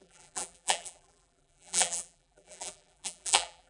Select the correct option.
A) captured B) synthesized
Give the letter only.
B